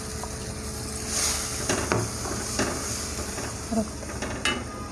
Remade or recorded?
recorded